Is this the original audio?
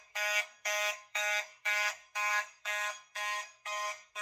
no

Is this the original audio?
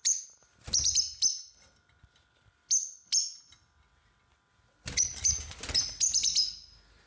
yes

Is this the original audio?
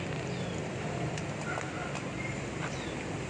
yes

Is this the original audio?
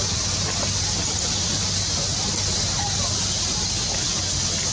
yes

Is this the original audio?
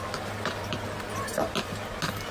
yes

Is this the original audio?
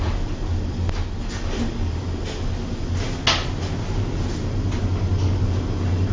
yes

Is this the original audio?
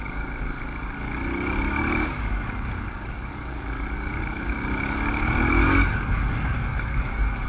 no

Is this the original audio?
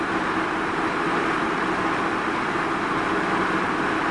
no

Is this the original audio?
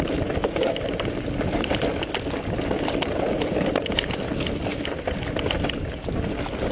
yes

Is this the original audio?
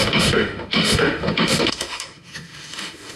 no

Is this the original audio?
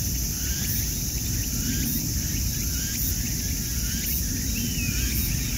yes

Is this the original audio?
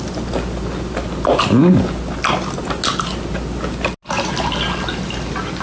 yes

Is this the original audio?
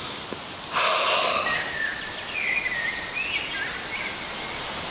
yes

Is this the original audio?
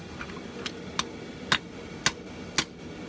yes